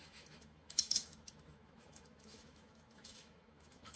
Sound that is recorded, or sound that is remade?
remade